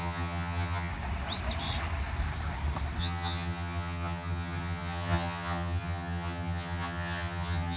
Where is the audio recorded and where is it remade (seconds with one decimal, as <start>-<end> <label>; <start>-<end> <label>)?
0.0-0.9 remade; 0.9-3.0 recorded; 3.0-7.8 remade